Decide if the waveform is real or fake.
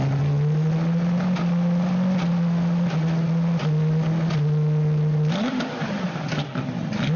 real